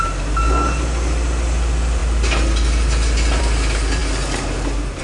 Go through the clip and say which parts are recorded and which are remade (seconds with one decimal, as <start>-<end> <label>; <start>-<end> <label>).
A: 0.0-5.0 recorded